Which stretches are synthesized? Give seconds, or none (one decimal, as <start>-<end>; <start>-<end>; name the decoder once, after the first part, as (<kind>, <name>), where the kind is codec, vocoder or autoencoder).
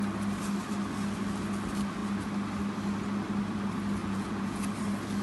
4.0-4.7 (vocoder, Vocos)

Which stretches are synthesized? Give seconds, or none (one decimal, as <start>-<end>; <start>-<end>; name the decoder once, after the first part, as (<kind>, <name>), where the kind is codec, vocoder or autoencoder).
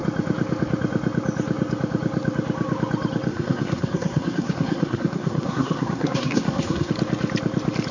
3.3-6.9 (codec, SNAC)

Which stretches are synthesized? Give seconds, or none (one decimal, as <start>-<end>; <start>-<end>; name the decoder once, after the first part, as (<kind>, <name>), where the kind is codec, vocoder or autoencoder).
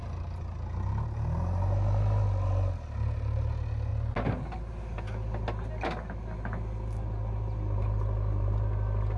none